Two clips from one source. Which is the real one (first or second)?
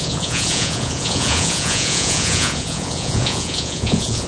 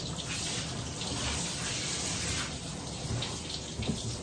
second